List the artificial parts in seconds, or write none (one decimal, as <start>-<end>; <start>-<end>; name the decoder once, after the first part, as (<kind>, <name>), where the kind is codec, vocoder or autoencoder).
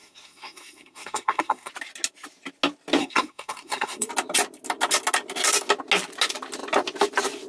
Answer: 0.0-1.7 (codec, SNAC); 3.0-4.1